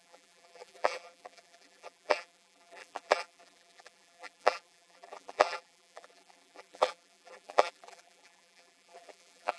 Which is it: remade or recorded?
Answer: remade